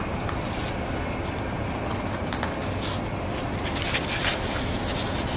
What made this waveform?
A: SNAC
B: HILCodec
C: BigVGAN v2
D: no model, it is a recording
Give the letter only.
D